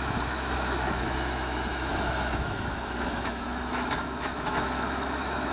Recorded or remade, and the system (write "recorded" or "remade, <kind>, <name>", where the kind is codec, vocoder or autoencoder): remade, autoencoder, DAC-VAE